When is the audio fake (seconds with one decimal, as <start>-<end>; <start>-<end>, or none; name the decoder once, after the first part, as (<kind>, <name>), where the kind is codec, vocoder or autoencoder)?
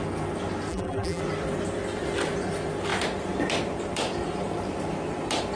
0.7-1.2 (vocoder, BigVGAN v2)